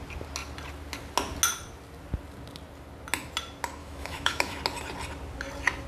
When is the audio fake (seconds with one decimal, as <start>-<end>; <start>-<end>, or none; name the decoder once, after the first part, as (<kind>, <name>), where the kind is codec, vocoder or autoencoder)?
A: 3.8-4.6 (autoencoder, DAC-VAE)